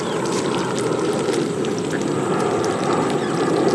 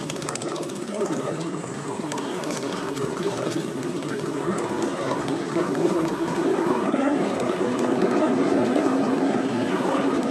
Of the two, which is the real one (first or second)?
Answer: first